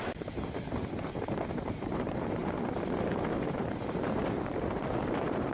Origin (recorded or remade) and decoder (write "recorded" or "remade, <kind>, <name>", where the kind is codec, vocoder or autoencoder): remade, vocoder, BigVGAN v2